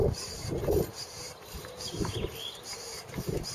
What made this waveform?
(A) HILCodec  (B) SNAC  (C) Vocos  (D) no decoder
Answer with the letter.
D